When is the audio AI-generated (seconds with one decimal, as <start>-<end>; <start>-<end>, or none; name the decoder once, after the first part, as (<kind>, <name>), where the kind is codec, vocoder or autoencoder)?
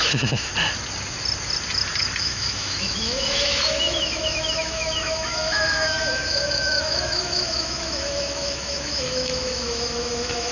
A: 0.0-0.5 (autoencoder, DAC-VAE); 2.2-10.5